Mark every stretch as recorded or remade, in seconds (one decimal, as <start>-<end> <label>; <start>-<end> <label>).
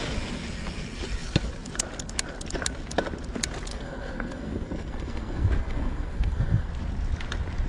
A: 0.0-3.7 recorded; 3.7-6.7 remade; 6.7-7.7 recorded